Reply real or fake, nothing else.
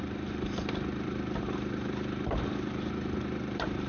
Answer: fake